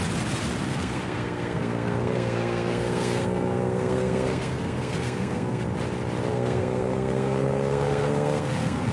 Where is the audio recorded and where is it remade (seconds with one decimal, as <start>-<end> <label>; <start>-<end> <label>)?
0.0-0.7 recorded; 0.7-5.6 remade; 5.6-6.3 recorded; 6.3-8.9 remade